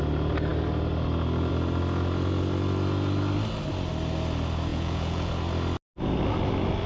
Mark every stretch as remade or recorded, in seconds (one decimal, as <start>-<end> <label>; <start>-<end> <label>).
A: 0.0-4.7 recorded; 4.7-5.3 remade; 5.3-6.9 recorded